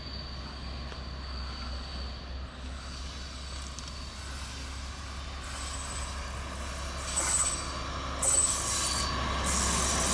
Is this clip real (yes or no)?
yes